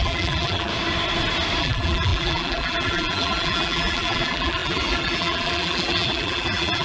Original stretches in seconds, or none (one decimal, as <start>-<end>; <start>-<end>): 0.7-1.6